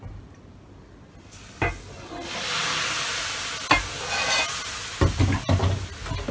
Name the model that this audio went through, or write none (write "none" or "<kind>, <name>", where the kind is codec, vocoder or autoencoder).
none